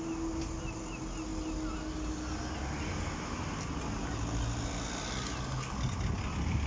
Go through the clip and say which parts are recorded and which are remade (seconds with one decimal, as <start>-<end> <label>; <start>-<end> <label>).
0.0-6.7 recorded